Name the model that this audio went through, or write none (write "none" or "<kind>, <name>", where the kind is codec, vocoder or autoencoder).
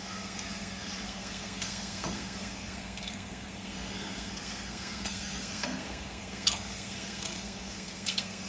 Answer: codec, SNAC